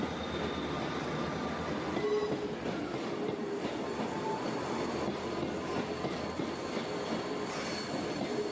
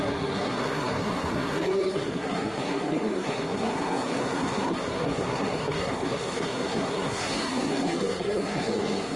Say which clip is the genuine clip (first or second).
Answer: first